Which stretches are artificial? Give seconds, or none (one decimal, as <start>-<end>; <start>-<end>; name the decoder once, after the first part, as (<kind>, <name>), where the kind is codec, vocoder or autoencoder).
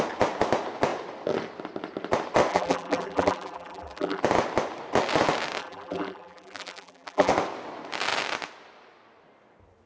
2.5-4.2 (vocoder, BigVGAN v2); 5.6-7.3